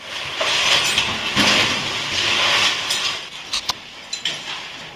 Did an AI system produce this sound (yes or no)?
no